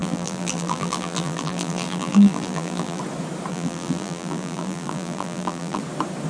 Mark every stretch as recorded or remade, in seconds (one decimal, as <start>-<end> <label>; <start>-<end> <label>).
0.0-3.0 remade; 3.0-3.5 recorded; 3.5-5.8 remade; 5.8-6.3 recorded